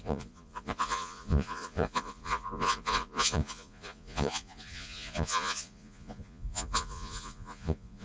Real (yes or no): no